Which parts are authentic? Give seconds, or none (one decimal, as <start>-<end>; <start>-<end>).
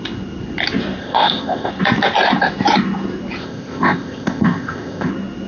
0.0-1.0; 1.7-3.4; 5.1-5.5